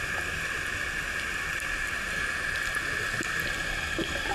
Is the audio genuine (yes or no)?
yes